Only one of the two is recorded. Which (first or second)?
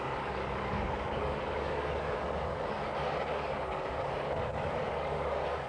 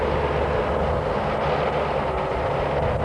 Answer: second